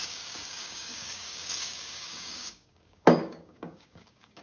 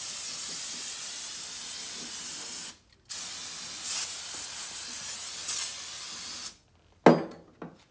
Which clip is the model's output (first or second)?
first